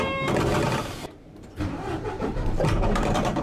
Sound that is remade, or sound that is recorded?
remade